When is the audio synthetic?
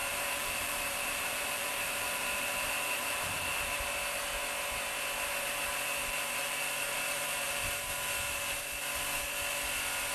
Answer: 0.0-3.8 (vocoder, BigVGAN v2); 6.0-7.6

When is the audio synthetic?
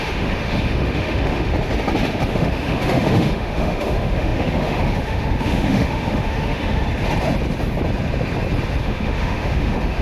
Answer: 0.0-1.5 (autoencoder, DAC-VAE); 2.3-6.8; 8.8-10.0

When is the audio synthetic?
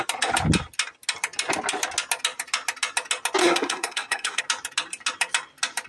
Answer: 3.4-4.4 (codec, SNAC)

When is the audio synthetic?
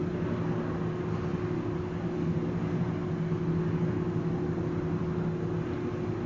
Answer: none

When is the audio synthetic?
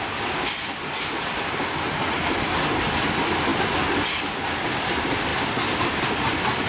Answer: 3.5-4.6 (vocoder, BigVGAN v2); 5.3-6.7